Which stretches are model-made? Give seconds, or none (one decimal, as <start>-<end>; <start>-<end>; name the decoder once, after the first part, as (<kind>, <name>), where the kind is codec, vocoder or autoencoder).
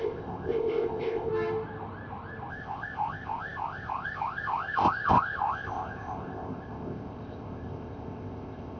0.0-1.3 (codec, ZipCodec); 2.5-8.8